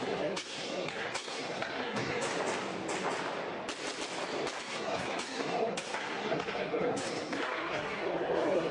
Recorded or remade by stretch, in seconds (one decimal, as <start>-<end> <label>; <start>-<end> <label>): 0.0-2.3 remade; 2.3-4.6 recorded; 4.6-8.7 remade